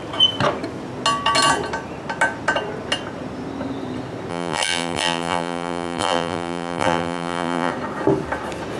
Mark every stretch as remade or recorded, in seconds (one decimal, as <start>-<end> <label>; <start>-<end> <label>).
0.0-4.3 recorded; 4.3-7.7 remade; 7.7-8.8 recorded